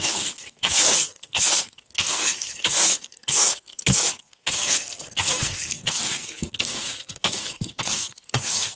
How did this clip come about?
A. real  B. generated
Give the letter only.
B